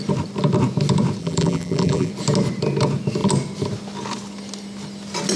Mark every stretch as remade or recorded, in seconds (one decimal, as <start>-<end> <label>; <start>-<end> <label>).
0.0-1.2 recorded; 1.2-2.1 remade; 2.1-5.4 recorded